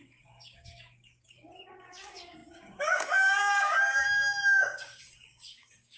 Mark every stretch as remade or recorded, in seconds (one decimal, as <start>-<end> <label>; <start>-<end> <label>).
0.0-6.0 remade